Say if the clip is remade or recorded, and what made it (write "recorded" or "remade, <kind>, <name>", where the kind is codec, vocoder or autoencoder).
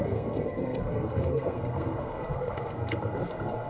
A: remade, codec, SNAC